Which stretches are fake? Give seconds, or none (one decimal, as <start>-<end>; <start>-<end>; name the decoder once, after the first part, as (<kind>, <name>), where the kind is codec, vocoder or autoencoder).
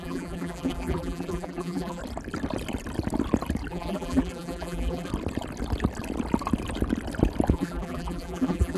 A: 0.0-2.0 (vocoder, BigVGAN v2); 3.7-5.1; 7.5-8.8